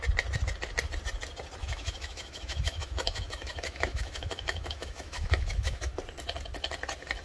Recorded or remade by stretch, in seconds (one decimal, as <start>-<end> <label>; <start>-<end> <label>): 0.0-1.6 recorded; 1.6-5.9 remade; 5.9-7.2 recorded